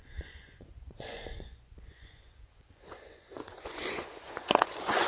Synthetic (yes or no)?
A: yes